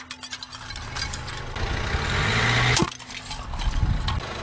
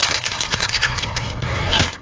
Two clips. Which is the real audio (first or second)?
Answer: first